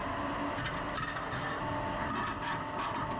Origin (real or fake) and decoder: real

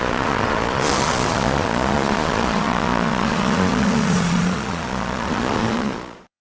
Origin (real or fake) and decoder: fake, vocoder, Vocos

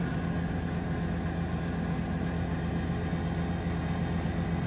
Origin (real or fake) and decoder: real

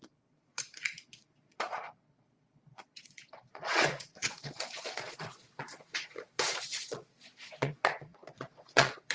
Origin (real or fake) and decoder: fake, vocoder, Vocos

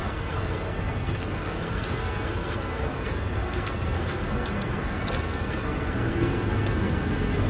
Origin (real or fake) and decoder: fake, codec, SNAC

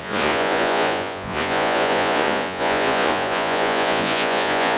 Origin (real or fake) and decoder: fake, vocoder, Vocos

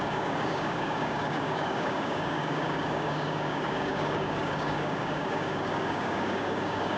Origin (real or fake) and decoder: fake, codec, DAC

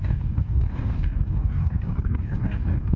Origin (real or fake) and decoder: fake, codec, DAC